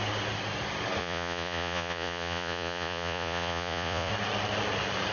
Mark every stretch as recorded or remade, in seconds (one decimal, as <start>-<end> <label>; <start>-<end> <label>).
0.0-1.0 recorded; 1.0-4.1 remade; 4.1-5.1 recorded